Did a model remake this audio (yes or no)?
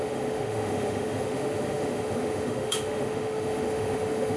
yes